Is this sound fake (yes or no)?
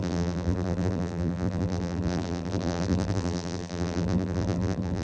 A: yes